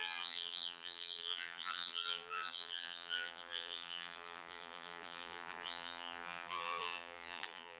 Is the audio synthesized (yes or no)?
yes